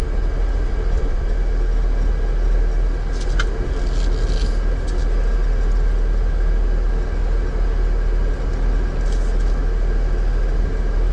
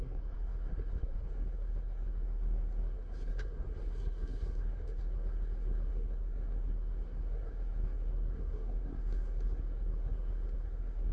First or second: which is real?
first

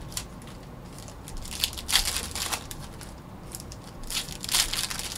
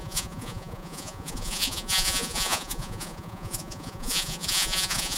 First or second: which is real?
first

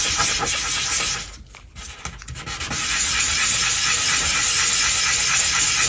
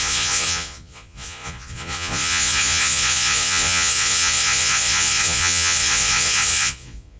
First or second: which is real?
first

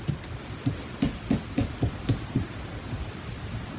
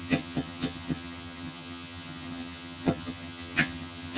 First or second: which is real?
first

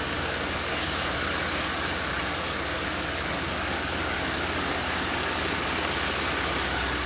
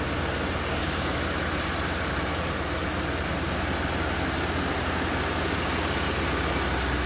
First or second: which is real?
second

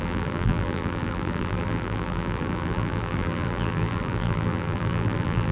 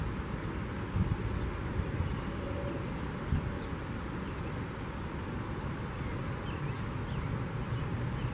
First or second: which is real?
second